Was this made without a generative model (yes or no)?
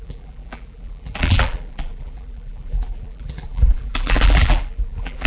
no